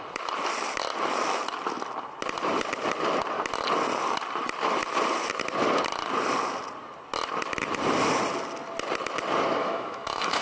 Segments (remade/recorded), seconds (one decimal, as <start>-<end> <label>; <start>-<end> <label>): 0.0-9.6 recorded; 9.6-10.4 remade